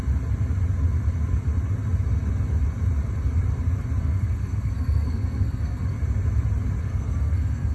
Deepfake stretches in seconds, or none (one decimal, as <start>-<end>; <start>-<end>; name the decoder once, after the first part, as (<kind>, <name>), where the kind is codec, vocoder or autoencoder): 4.0-5.8 (codec, SNAC); 6.8-7.7